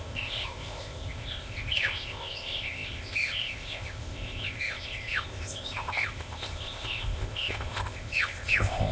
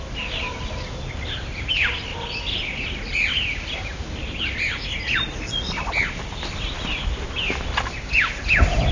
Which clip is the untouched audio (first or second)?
second